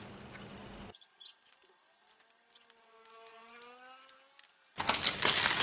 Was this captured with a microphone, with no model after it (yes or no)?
yes